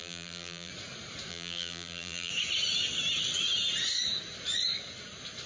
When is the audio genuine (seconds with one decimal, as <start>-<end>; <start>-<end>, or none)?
0.7-1.3; 2.3-5.5

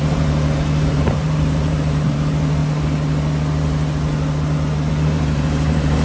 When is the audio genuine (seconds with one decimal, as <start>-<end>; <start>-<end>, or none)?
2.6-4.9

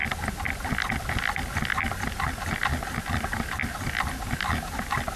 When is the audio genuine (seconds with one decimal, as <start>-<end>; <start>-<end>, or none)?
0.0-3.1

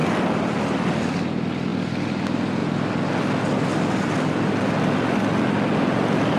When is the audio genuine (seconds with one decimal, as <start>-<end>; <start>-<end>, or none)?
0.0-6.4